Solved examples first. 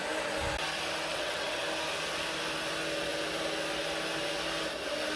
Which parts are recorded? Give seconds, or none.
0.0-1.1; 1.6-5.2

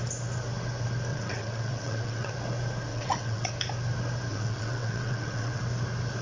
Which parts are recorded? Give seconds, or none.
0.0-1.1; 2.3-2.9; 3.5-4.3; 5.6-6.2

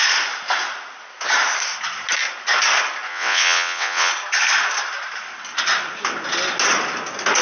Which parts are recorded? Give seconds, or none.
0.0-3.1; 4.1-7.4